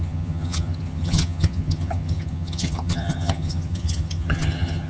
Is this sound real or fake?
fake